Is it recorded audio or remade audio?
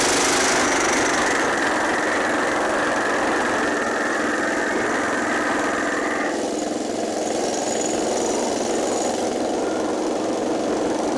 recorded